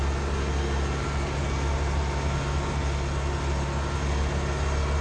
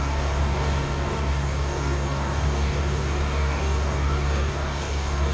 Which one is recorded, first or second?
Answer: first